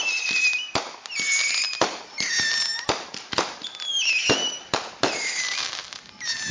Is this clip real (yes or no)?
yes